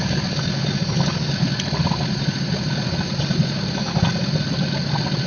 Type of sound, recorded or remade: recorded